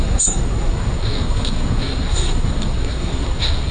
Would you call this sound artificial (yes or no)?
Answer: yes